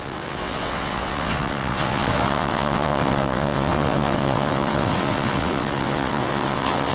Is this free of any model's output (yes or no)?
no